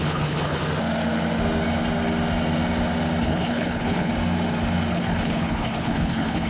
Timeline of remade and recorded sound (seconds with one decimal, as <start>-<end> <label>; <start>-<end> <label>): 0.0-0.6 remade; 0.6-3.2 recorded; 3.2-4.1 remade; 4.1-4.9 recorded; 4.9-6.5 remade